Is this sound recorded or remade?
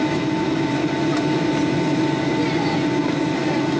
recorded